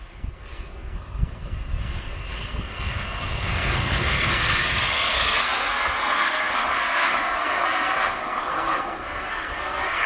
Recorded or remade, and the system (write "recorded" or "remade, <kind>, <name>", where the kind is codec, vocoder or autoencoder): remade, codec, SNAC